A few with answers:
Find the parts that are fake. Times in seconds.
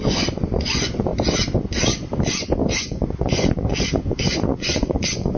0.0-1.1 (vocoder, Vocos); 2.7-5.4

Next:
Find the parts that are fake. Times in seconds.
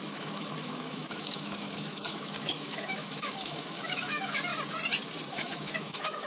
0.0-4.5 (autoencoder, DAC-VAE); 5.3-6.3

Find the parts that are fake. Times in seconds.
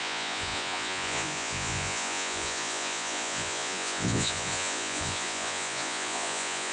0.0-6.7 (vocoder, Vocos)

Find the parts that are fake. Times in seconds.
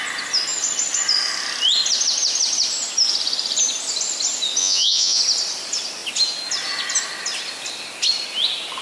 4.6-5.2 (vocoder, Vocos)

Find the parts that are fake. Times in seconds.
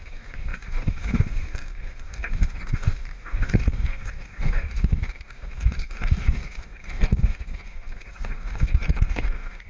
0.0-9.7 (codec, DAC)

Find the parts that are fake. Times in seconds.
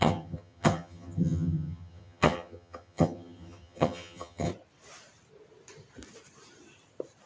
0.0-4.5 (vocoder, HiFi-GAN)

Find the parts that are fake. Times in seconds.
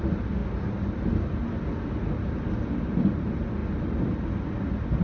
none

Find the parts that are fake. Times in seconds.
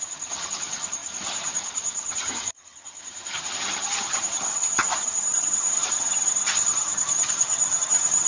0.0-8.3 (vocoder, HiFi-GAN)